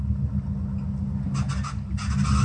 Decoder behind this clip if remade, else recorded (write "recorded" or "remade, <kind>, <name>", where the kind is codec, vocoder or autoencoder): recorded